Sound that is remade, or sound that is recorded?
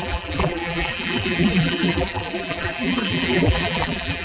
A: remade